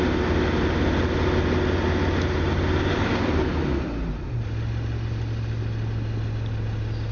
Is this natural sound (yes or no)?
yes